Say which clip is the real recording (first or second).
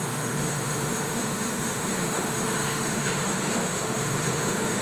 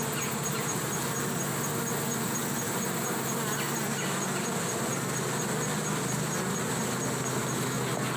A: second